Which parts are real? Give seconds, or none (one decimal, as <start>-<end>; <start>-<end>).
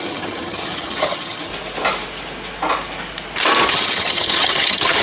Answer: 1.5-3.7